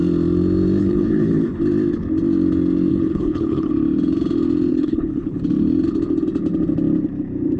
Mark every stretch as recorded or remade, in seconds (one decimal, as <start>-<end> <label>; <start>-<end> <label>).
0.0-0.8 recorded; 0.8-1.6 remade; 1.6-2.9 recorded; 2.9-3.7 remade; 3.7-4.7 recorded; 4.7-5.4 remade; 5.4-7.6 recorded